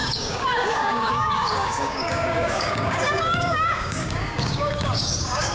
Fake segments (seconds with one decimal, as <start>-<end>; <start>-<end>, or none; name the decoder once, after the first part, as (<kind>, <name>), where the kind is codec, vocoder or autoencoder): 0.0-5.5 (codec, DAC)